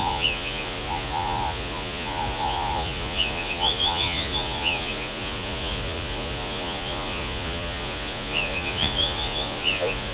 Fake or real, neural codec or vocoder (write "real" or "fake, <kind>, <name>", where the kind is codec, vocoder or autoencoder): fake, vocoder, Vocos